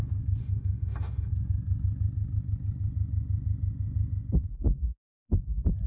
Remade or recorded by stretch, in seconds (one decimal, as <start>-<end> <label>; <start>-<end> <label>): 0.0-0.4 recorded; 0.4-1.3 remade; 1.3-5.9 recorded